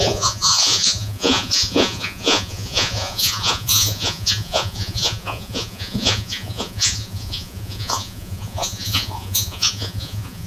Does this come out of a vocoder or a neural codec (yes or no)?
yes